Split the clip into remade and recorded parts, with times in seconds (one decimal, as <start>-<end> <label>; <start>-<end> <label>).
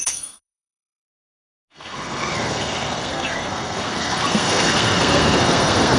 0.0-6.0 remade